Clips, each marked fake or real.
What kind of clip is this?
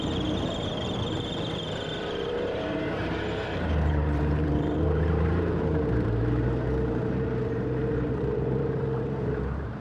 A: fake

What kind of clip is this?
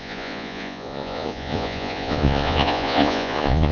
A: fake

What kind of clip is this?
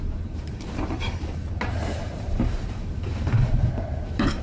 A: fake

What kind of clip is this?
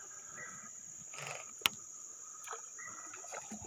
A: real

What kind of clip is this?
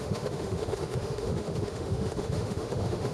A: fake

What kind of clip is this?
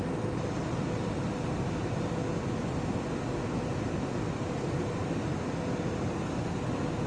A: real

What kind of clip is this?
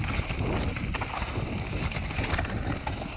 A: real